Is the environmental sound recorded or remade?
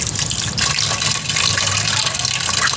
recorded